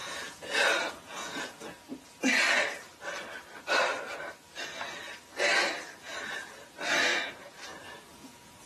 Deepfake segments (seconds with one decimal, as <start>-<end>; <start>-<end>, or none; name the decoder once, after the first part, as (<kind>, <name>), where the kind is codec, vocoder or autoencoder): 0.0-1.9 (vocoder, Vocos); 6.0-8.7